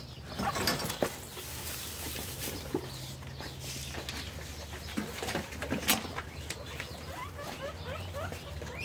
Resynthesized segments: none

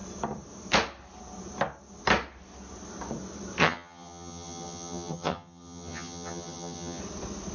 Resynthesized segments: 3.6-7.0

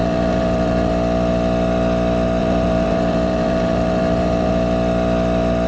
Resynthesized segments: 0.0-0.9; 2.4-4.5

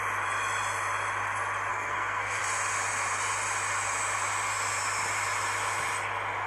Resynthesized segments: 1.7-2.4

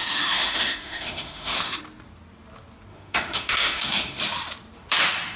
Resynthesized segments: 0.0-1.8; 2.9-4.2

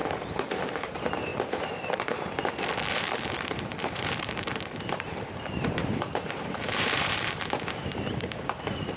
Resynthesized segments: 0.0-1.3; 2.9-9.0

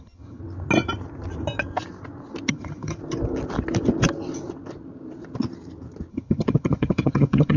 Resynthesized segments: 0.0-0.4; 2.5-3.0; 6.1-7.6